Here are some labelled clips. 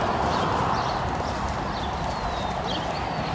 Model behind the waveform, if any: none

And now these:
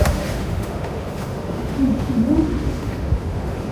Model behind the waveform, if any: autoencoder, DAC-VAE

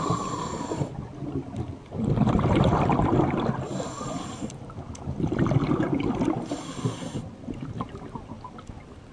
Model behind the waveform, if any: none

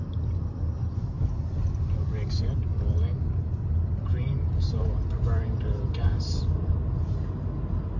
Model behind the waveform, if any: none